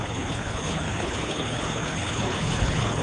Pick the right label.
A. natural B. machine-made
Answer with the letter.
B